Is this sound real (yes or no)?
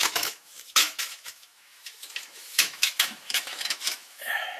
no